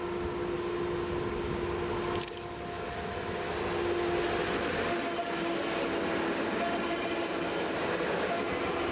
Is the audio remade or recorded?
recorded